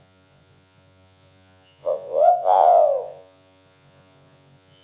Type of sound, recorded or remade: remade